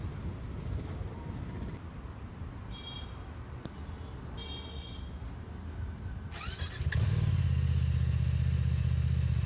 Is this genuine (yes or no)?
yes